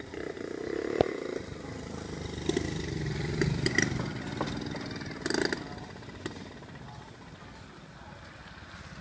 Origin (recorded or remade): recorded